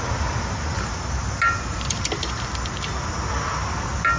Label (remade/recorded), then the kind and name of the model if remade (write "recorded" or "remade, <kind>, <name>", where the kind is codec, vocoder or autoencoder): recorded